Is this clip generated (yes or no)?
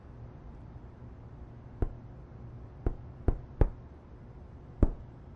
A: no